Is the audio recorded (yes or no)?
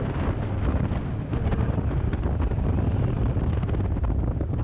yes